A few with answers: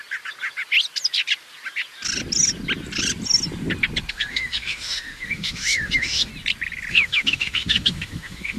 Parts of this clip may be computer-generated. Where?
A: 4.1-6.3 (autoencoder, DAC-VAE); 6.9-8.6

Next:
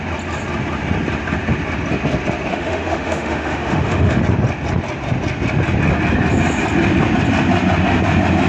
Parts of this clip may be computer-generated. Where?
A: 2.5-4.2 (autoencoder, DAC-VAE)

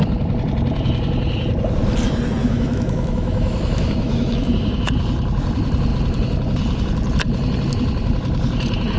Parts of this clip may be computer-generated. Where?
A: 2.4-4.9 (autoencoder, DAC-VAE)

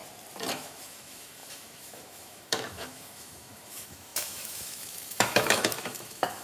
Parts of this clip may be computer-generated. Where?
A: 0.5-6.4 (autoencoder, DAC-VAE)